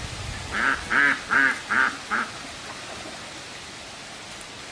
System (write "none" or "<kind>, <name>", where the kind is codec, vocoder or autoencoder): none